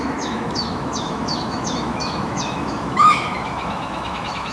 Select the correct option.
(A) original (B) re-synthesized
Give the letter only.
B